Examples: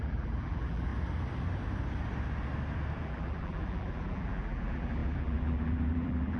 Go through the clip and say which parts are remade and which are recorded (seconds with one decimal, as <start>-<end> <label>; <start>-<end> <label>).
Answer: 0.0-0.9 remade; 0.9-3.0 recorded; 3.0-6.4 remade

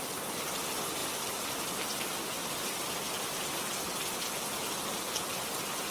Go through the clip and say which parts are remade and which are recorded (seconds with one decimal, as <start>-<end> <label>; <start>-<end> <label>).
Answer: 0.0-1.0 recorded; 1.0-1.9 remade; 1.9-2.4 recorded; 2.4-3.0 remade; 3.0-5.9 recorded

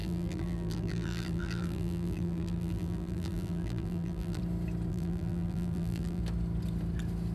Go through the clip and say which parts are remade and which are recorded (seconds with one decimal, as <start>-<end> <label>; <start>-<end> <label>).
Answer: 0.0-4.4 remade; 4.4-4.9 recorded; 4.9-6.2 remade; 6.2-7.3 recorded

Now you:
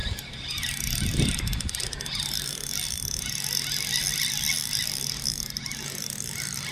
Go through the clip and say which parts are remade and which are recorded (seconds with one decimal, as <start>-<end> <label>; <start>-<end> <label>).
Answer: 0.0-4.0 recorded; 4.0-5.8 remade; 5.8-6.7 recorded